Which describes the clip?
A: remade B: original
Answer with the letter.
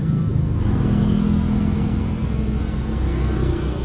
A